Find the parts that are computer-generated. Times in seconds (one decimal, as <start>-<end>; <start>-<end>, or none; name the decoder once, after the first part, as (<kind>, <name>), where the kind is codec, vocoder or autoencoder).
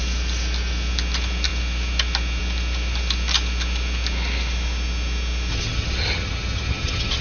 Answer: 5.5-7.2 (vocoder, HiFi-GAN)